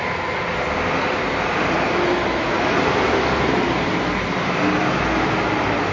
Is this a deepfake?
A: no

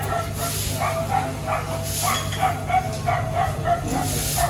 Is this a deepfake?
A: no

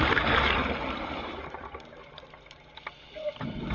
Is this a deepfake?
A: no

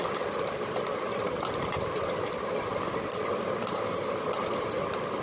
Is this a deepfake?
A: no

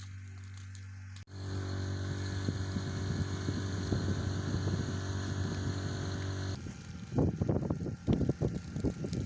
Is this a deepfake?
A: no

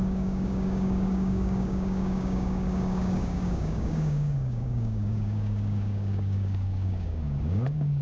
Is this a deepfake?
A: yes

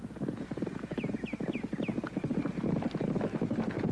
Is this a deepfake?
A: no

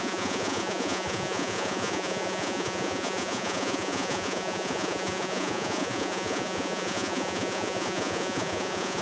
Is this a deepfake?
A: yes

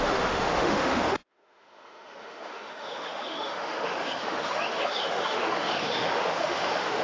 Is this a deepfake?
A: yes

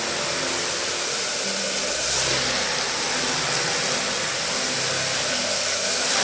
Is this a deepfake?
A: no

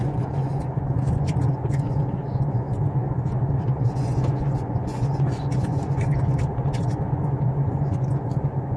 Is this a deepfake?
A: yes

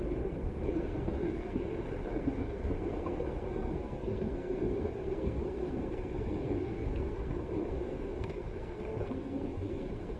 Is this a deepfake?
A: yes